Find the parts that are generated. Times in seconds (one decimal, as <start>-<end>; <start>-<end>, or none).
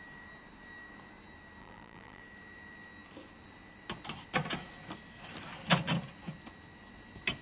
1.6-2.2